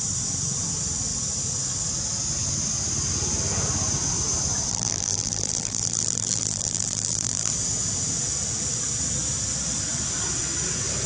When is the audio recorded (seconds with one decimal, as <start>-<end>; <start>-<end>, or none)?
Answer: 0.0-4.7; 7.5-11.1